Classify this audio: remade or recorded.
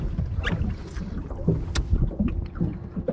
recorded